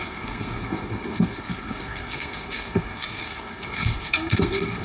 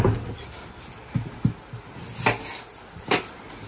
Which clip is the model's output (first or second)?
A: first